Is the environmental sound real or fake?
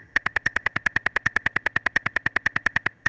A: fake